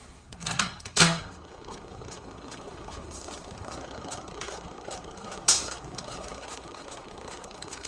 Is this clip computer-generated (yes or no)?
yes